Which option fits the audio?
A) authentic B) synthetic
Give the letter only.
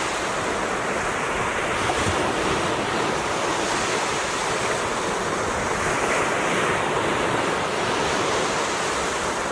A